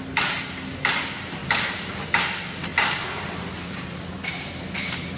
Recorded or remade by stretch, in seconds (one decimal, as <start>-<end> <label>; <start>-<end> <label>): 0.0-1.4 recorded; 1.4-2.2 remade; 2.2-5.2 recorded